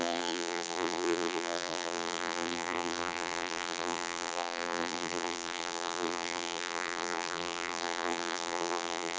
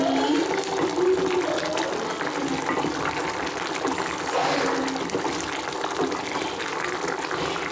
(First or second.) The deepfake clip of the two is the first